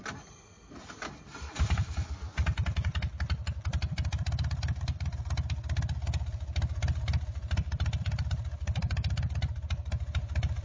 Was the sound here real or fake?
real